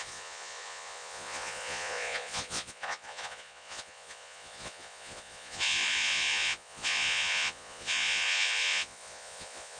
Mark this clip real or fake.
fake